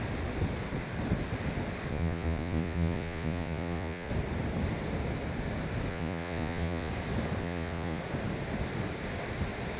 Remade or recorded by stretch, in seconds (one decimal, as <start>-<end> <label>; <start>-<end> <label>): 0.0-1.9 recorded; 1.9-4.1 remade; 4.1-5.9 recorded; 5.9-6.9 remade; 6.9-7.4 recorded; 7.4-8.0 remade; 8.0-9.8 recorded